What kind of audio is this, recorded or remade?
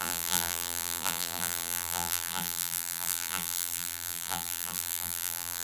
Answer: remade